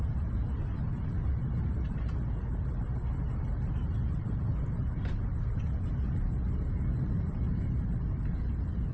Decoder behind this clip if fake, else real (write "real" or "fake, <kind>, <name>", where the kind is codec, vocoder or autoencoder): fake, vocoder, BigVGAN v2